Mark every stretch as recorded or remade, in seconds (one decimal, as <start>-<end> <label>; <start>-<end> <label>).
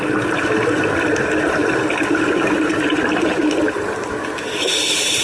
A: 0.0-5.2 recorded